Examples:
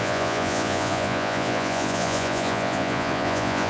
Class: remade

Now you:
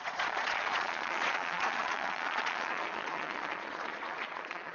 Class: remade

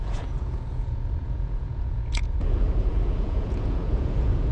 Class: remade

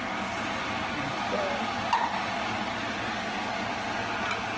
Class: recorded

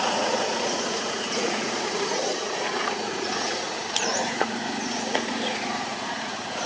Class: remade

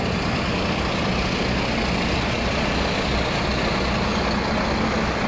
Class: recorded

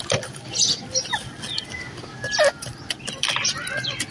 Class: recorded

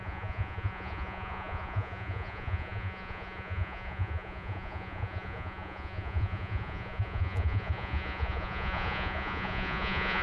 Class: remade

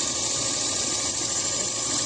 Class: remade